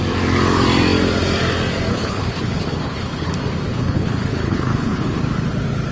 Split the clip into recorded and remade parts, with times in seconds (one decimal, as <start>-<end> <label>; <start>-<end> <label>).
0.0-1.9 recorded; 1.9-3.3 remade; 3.3-3.7 recorded; 3.7-5.2 remade; 5.2-5.9 recorded